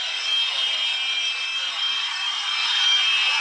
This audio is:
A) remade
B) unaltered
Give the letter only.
A